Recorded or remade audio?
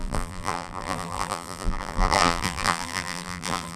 remade